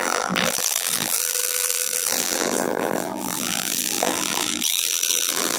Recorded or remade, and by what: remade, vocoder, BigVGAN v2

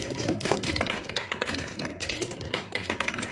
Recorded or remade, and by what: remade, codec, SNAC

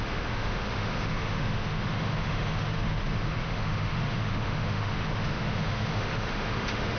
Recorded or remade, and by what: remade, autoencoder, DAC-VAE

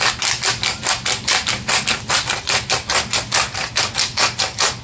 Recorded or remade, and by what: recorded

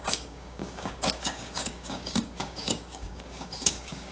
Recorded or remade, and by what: remade, codec, DAC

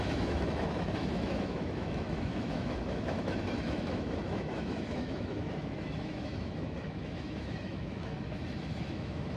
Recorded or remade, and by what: remade, autoencoder, DAC-VAE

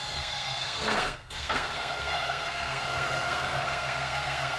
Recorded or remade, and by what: remade, codec, SNAC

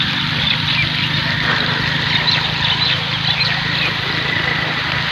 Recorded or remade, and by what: recorded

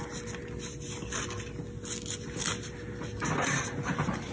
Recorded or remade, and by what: recorded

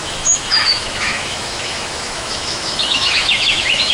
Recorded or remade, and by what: remade, autoencoder, DAC-VAE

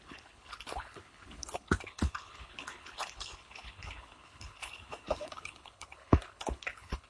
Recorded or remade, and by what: remade, codec, HILCodec